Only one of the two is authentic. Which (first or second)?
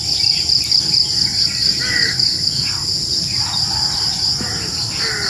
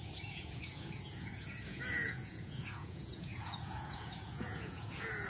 first